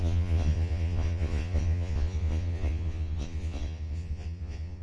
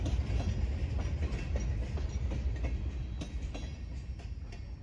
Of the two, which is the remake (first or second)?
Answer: first